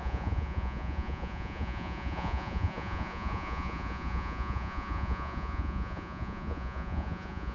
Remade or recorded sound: remade